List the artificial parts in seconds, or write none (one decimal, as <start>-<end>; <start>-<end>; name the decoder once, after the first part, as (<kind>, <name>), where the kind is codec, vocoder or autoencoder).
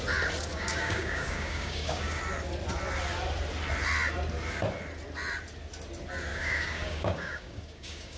0.5-2.2 (codec, DAC); 6.3-8.2